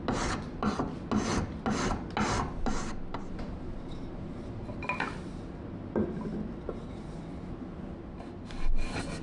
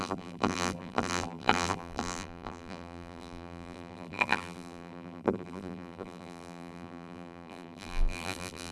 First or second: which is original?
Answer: first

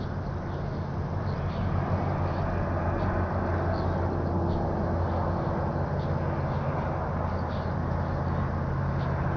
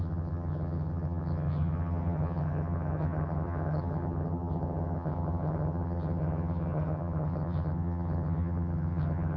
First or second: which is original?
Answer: first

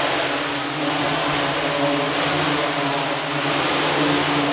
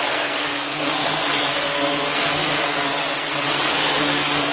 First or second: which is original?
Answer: first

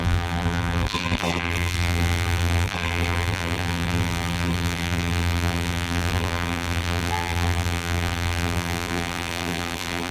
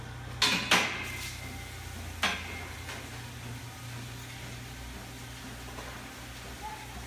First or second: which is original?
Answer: second